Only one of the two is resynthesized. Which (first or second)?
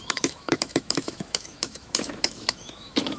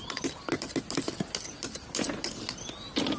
first